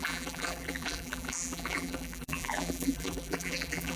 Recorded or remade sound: remade